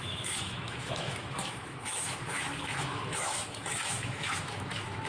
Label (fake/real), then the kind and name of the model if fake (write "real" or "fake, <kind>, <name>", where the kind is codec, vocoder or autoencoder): fake, autoencoder, DAC-VAE